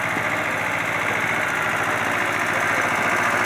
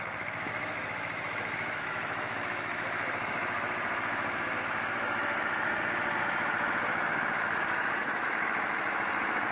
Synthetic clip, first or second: second